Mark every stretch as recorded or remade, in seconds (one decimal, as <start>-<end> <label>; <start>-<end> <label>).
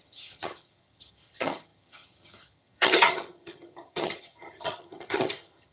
0.0-5.7 remade